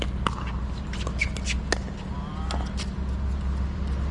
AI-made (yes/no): no